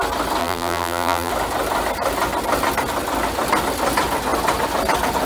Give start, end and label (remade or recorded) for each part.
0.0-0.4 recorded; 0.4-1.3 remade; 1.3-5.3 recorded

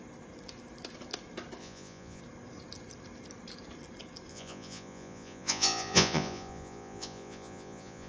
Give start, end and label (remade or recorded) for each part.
0.0-1.6 recorded; 1.6-2.2 remade; 2.2-4.3 recorded; 4.3-8.1 remade

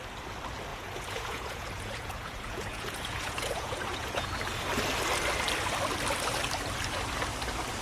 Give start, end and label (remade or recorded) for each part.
0.0-0.7 recorded; 0.7-4.3 remade; 4.3-7.8 recorded

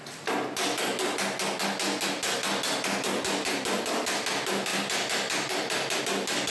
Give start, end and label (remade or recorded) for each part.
0.0-4.7 recorded; 4.7-6.0 remade; 6.0-6.5 recorded

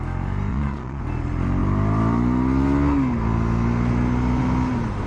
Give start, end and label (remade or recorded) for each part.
0.0-0.5 recorded; 0.5-1.0 remade; 1.0-5.1 recorded

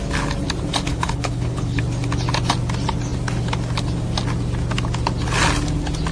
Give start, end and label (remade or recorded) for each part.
0.0-0.9 recorded; 0.9-1.8 remade; 1.8-6.1 recorded

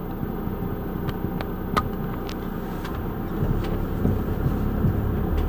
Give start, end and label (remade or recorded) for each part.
0.0-5.5 recorded

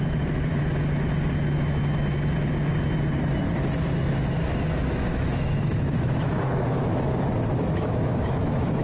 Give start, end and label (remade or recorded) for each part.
0.0-0.5 remade; 0.5-4.1 recorded; 4.1-8.8 remade